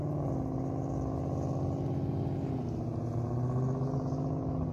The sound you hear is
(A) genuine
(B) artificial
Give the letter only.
A